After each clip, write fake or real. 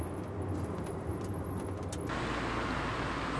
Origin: real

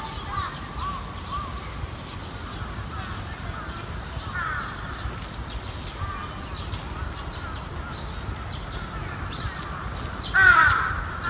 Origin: real